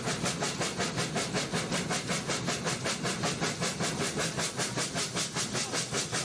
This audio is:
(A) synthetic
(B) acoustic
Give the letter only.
B